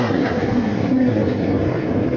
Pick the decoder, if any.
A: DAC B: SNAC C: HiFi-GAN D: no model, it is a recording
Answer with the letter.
B